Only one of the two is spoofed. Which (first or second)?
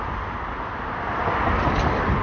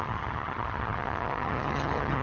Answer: second